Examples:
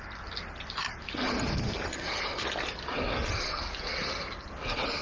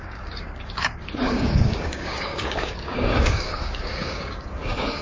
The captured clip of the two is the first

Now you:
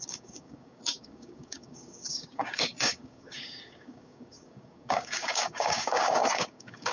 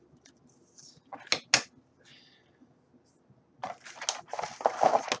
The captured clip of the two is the second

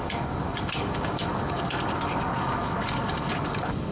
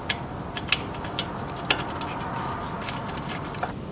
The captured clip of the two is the second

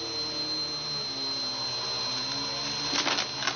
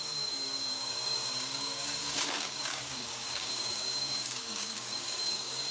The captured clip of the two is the first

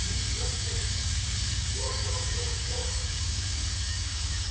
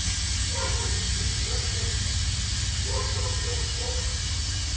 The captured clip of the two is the second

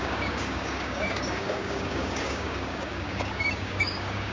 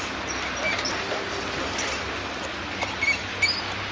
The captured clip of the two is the second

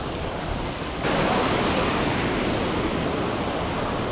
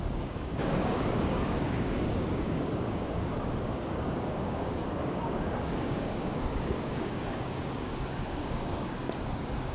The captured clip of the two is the first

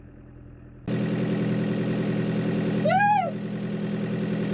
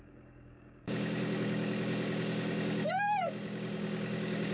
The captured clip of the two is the first